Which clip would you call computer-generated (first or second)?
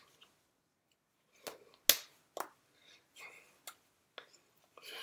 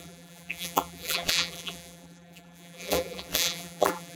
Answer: second